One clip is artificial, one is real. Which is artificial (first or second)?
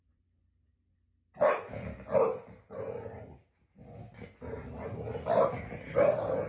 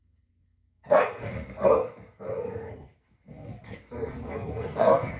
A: second